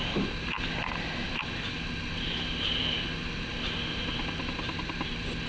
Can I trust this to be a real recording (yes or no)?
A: yes